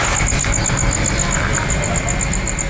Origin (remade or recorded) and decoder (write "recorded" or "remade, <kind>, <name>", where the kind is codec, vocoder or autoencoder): recorded